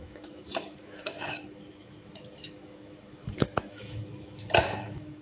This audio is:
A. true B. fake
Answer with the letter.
B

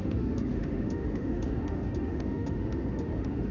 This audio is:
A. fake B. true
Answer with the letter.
A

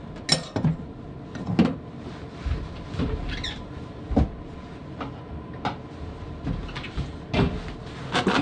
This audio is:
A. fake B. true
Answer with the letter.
B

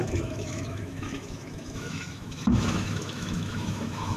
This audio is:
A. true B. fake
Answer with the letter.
B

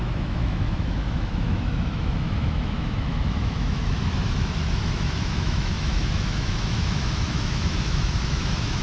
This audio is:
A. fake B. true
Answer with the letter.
A